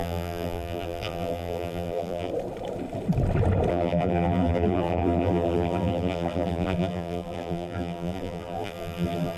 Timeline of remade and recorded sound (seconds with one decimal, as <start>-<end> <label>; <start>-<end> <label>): 0.0-2.3 remade; 2.3-3.7 recorded; 3.7-9.4 remade